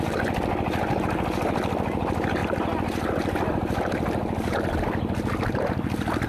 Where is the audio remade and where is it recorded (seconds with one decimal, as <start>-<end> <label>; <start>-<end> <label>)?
0.0-6.3 recorded